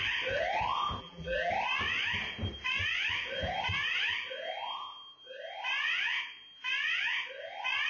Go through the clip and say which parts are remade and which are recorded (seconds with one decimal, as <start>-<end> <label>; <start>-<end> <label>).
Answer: 0.0-1.0 recorded; 1.0-1.5 remade; 1.5-7.9 recorded